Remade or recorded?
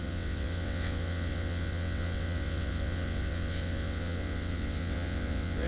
remade